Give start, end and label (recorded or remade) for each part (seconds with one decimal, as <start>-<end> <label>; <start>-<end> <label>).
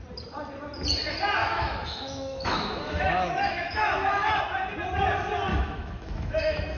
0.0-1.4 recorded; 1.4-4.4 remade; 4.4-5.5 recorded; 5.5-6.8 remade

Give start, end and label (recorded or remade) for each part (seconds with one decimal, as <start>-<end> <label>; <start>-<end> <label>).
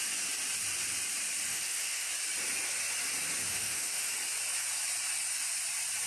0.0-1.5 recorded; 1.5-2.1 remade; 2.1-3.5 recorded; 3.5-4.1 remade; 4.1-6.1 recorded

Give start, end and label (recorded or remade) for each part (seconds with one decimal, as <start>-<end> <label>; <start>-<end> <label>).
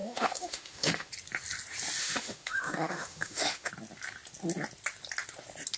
0.0-1.1 remade; 1.1-2.0 recorded; 2.0-3.7 remade; 3.7-5.8 recorded